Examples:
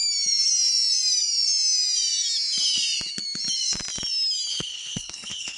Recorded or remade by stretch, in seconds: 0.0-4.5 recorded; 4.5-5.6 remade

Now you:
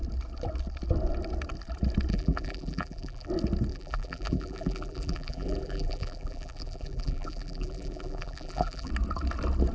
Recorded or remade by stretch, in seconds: 0.0-2.1 recorded; 2.1-3.3 remade; 3.3-3.7 recorded; 3.7-8.9 remade; 8.9-9.7 recorded

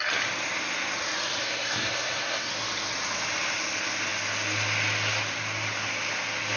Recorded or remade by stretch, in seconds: 0.0-1.4 recorded; 1.4-2.5 remade; 2.5-6.6 recorded

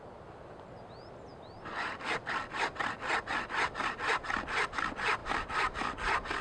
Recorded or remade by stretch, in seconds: 0.0-6.4 recorded

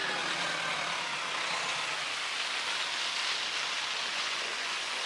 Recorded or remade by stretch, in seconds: 0.0-4.1 recorded; 4.1-5.1 remade

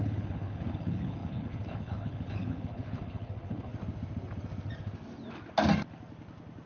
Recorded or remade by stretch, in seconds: 0.0-3.7 remade; 3.7-6.7 recorded

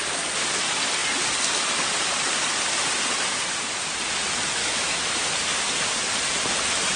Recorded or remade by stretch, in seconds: 0.0-4.6 recorded; 4.6-5.3 remade; 5.3-7.0 recorded